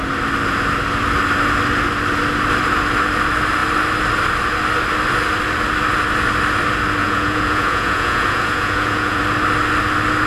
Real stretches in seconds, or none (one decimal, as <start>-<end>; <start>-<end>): 0.0-7.0; 9.2-10.3